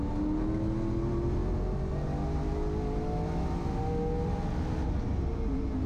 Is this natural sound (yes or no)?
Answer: yes